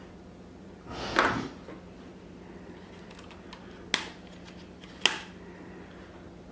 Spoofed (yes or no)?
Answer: no